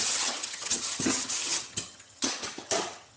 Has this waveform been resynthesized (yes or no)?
yes